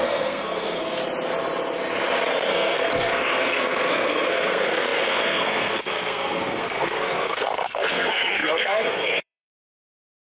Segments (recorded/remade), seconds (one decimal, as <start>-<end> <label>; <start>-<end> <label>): 0.0-1.0 remade; 1.0-2.5 recorded; 2.5-10.2 remade